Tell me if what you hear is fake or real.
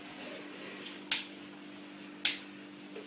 real